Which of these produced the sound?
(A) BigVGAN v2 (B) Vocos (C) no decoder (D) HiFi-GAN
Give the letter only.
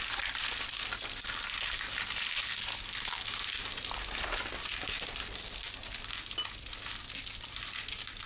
C